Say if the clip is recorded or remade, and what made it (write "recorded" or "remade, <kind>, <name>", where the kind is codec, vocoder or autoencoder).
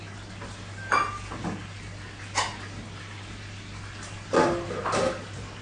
recorded